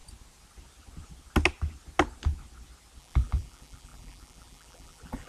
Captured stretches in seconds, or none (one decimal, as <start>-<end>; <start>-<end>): 0.0-3.0